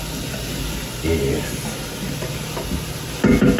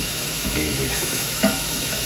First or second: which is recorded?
first